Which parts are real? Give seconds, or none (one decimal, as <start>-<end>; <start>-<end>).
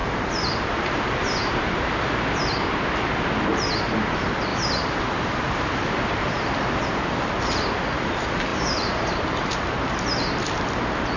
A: 1.5-4.5; 7.4-8.5; 9.2-11.2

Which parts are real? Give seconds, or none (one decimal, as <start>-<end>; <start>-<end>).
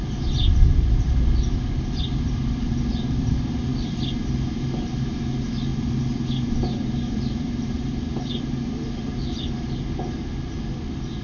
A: 0.0-11.2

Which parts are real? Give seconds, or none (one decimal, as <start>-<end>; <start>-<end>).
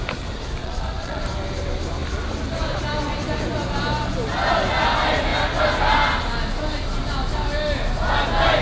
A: 0.0-0.6; 1.2-8.6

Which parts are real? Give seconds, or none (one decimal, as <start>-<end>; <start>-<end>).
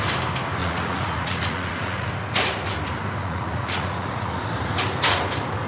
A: 0.0-0.6; 2.1-3.2; 4.4-5.7